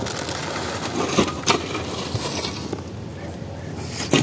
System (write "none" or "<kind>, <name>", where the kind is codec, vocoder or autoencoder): none